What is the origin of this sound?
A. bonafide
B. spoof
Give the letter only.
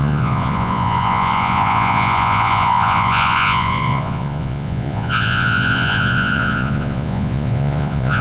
B